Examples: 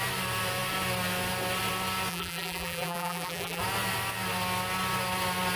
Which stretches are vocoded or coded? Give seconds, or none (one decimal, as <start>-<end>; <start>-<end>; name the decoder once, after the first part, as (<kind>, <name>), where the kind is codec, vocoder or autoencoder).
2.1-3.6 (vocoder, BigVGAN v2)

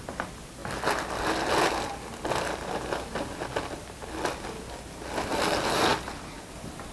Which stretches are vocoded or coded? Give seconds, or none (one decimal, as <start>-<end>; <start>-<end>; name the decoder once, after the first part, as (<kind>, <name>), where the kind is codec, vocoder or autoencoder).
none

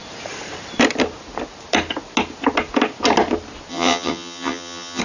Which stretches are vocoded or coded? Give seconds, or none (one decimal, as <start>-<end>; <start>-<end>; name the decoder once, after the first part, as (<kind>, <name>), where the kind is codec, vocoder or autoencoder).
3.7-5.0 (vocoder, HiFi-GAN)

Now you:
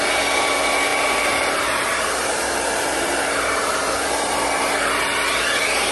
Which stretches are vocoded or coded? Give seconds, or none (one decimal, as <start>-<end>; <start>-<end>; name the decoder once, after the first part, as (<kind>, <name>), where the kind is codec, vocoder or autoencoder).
0.9-4.4 (vocoder, BigVGAN v2)